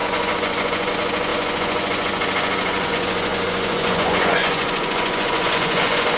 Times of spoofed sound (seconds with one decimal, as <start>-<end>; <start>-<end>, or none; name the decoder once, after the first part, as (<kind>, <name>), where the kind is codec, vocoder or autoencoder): 0.0-6.2 (vocoder, Vocos)